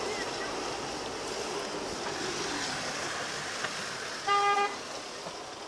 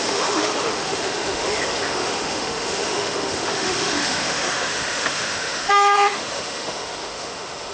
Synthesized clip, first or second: second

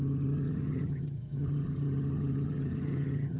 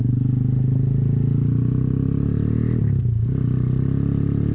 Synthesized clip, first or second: first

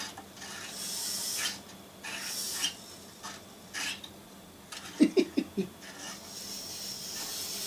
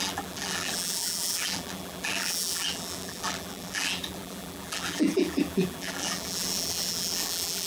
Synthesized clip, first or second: second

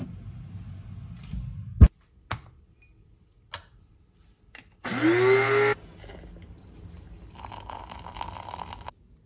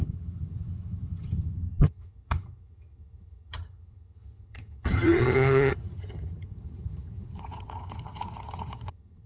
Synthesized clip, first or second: second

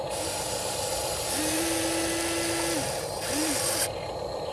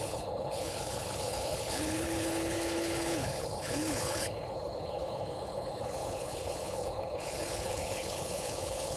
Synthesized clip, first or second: second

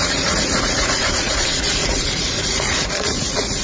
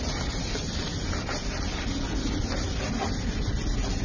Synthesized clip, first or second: first